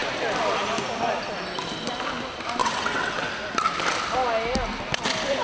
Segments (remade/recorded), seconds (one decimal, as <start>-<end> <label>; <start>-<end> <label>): 0.0-2.6 recorded; 2.6-3.3 remade; 3.3-5.4 recorded